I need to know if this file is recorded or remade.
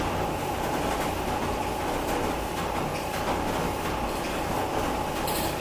recorded